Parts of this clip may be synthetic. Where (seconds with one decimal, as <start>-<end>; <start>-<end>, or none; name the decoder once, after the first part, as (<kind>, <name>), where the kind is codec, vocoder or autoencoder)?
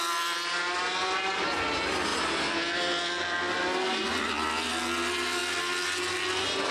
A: none